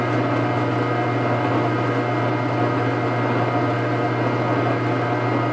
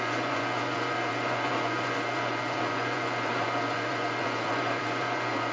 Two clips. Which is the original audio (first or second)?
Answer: first